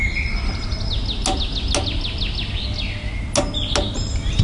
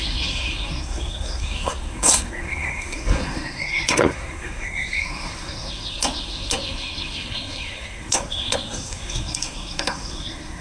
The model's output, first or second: second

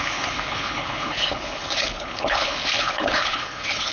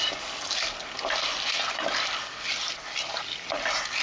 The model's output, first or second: first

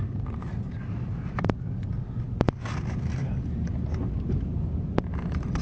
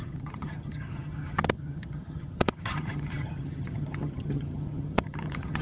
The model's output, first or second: second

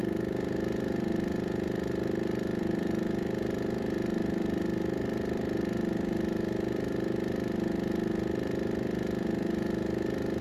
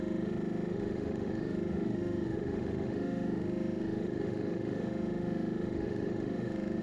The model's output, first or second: second